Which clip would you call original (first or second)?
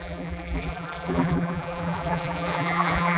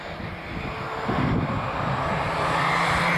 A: second